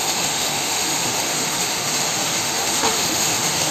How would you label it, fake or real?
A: fake